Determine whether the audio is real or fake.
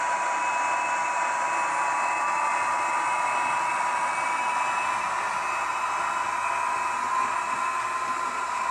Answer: real